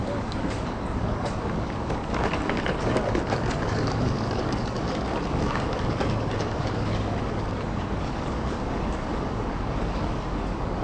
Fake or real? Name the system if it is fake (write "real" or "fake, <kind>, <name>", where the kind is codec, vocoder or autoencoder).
fake, codec, DAC